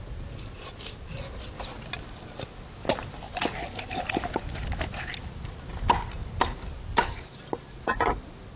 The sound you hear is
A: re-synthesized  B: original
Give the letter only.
B